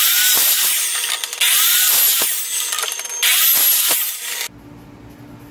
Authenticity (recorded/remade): recorded